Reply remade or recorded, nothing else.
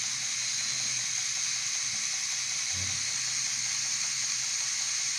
recorded